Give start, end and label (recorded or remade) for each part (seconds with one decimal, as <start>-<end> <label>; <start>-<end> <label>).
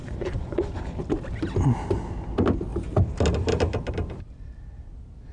0.0-0.8 remade; 0.8-5.3 recorded